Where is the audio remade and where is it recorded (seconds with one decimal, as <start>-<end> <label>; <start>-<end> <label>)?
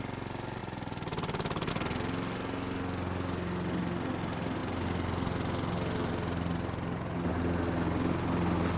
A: 0.0-8.8 recorded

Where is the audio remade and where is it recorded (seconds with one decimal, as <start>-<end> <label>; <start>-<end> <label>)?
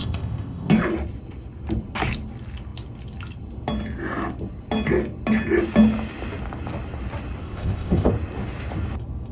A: 0.0-0.7 remade; 0.7-7.4 recorded; 7.4-8.1 remade; 8.1-9.3 recorded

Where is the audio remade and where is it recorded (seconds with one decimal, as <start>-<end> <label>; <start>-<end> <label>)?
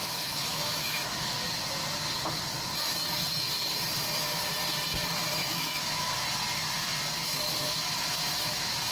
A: 0.0-1.3 remade; 1.3-5.4 recorded; 5.4-6.1 remade; 6.1-8.9 recorded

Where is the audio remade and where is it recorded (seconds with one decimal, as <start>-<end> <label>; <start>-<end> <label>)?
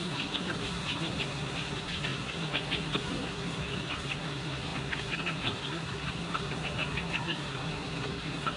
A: 0.0-8.6 remade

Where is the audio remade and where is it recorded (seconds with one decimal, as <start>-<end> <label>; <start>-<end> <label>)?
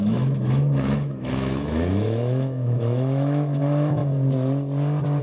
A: 0.0-4.0 remade; 4.0-5.2 recorded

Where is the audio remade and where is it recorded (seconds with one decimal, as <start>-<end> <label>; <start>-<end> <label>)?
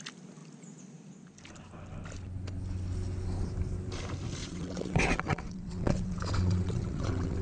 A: 0.0-4.4 recorded; 4.4-7.4 remade